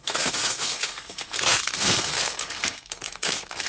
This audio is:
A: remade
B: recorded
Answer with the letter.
A